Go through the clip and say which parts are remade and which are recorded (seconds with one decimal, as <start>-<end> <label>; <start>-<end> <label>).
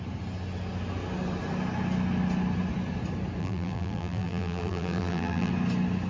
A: 0.0-3.4 recorded; 3.4-5.5 remade; 5.5-6.1 recorded